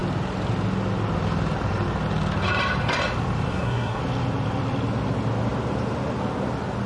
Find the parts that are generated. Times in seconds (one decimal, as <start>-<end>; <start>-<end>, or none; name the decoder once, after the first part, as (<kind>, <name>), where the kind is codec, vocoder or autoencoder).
3.5-4.0 (codec, SNAC)